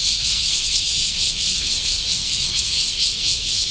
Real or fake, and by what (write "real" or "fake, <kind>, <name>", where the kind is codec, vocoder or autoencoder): fake, codec, SNAC